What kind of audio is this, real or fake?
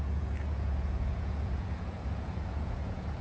fake